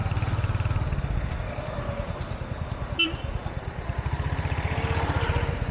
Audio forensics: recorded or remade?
recorded